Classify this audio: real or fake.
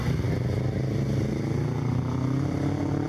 real